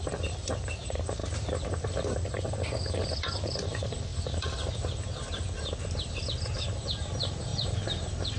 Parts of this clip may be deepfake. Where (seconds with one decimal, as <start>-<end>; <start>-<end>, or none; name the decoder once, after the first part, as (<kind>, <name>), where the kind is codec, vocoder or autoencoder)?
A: 0.0-1.2 (vocoder, BigVGAN v2); 1.8-4.1; 6.5-8.4